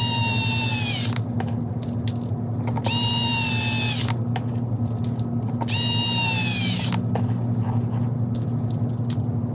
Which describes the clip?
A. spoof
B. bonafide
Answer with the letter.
B